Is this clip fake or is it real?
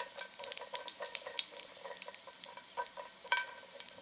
fake